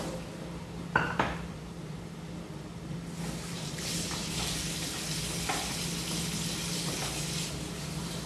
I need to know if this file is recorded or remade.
recorded